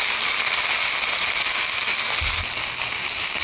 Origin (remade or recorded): recorded